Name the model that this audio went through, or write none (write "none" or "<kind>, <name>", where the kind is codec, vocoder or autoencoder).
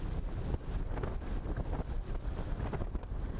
none